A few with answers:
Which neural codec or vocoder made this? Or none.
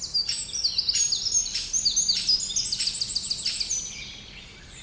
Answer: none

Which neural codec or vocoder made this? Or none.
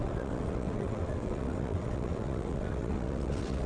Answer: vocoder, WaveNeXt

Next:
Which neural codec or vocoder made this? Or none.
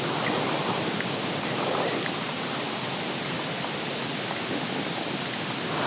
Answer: none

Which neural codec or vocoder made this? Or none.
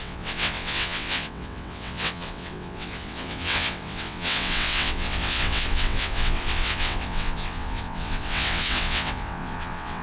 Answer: vocoder, WaveNeXt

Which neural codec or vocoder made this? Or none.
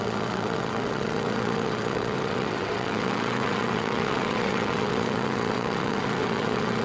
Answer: vocoder, WaveNeXt